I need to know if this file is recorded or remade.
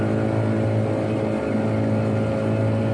recorded